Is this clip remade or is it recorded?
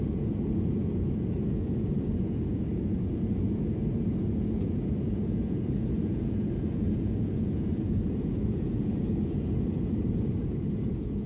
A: remade